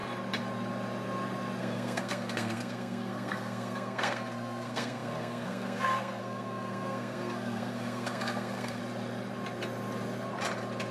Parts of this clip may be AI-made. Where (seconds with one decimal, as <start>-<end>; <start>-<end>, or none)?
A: 1.6-8.8